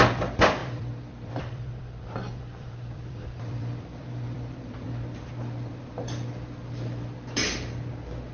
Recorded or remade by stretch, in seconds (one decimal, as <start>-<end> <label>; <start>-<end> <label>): 0.0-0.6 recorded; 0.6-5.3 remade; 5.3-8.3 recorded